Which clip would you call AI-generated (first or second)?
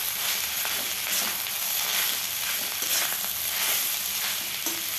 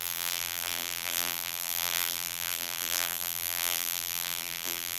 second